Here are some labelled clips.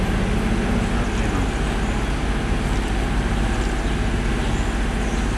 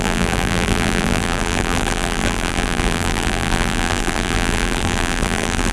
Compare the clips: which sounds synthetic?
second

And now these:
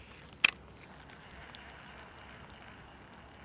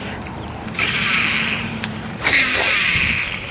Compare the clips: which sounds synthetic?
second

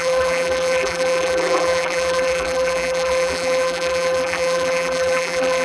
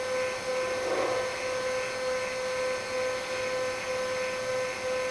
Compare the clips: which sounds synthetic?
first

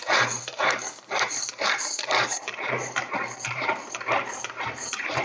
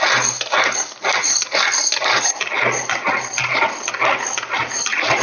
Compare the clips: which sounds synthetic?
first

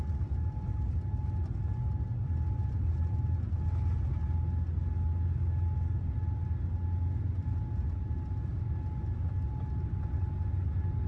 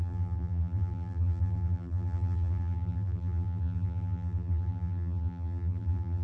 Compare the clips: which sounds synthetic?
second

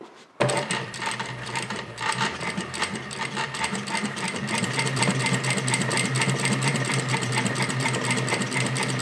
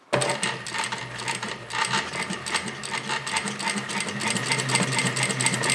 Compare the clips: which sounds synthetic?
first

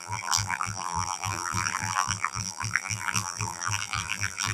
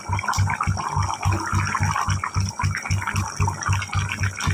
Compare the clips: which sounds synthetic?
first